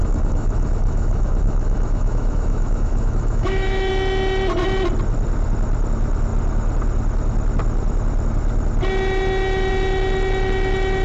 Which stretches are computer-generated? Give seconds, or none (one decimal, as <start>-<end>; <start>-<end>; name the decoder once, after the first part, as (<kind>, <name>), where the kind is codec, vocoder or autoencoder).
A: 0.0-3.9 (autoencoder, DAC-VAE)